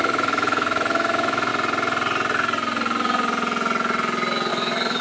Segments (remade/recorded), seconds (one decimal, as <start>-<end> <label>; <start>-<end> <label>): 0.0-1.5 remade; 1.5-4.5 recorded; 4.5-5.0 remade